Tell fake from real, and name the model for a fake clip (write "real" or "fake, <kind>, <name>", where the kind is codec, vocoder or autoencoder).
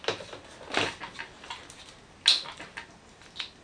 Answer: real